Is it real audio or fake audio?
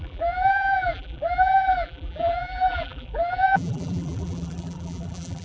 fake